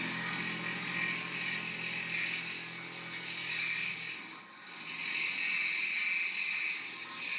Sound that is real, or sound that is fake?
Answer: real